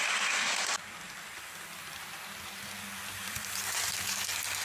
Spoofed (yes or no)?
no